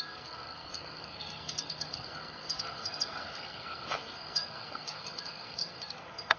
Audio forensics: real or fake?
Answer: fake